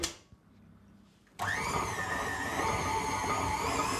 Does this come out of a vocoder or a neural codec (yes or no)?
no